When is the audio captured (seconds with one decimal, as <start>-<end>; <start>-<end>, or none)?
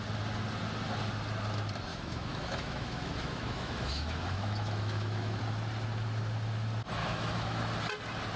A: 0.0-1.9; 5.4-7.0; 7.6-8.4